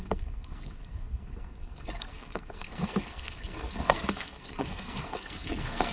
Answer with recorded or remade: remade